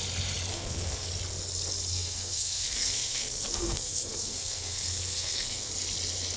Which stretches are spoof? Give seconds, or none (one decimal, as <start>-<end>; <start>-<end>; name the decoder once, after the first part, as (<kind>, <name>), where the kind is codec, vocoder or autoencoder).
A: 0.5-1.1 (codec, SNAC); 1.9-5.7